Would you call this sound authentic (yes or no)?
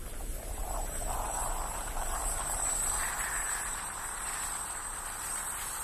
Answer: no